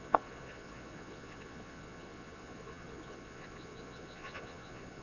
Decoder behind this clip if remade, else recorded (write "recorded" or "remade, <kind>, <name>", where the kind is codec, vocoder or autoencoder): remade, vocoder, Vocos